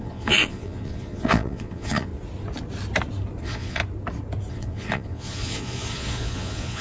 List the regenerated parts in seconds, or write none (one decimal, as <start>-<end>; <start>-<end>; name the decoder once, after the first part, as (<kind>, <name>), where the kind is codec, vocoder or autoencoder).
0.0-2.1 (vocoder, Vocos); 3.4-3.8; 4.5-6.8